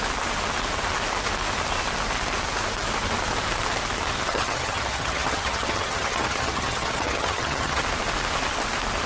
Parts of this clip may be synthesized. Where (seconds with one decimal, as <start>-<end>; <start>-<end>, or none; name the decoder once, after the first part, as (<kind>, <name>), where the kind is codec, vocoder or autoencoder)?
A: 4.2-7.8 (vocoder, HiFi-GAN)